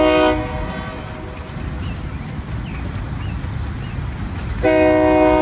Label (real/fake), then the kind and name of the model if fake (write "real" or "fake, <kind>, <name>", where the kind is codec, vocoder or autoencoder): real